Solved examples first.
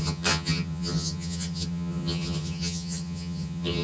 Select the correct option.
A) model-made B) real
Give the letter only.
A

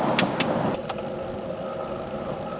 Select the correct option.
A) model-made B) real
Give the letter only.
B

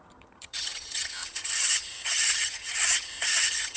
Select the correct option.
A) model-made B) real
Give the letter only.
A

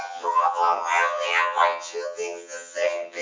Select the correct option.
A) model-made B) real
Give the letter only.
A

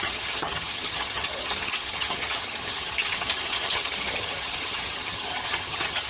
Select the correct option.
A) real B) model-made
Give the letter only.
B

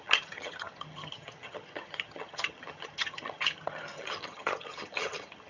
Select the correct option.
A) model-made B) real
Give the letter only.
A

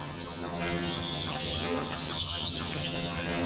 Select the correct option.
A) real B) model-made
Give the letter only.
B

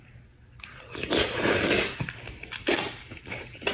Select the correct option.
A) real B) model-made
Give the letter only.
A